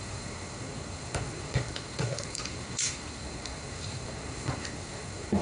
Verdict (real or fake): fake